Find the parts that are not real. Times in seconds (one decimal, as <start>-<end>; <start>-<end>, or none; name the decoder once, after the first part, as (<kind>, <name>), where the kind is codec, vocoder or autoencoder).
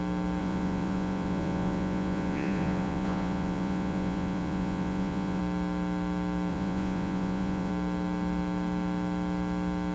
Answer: 0.4-5.4 (vocoder, Vocos); 6.5-7.7